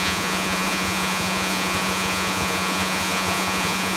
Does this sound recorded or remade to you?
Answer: remade